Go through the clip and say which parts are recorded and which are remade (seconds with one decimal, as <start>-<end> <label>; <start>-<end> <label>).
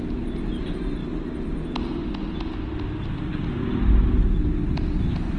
0.0-5.4 recorded